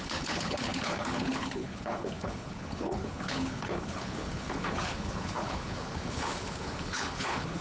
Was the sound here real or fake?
fake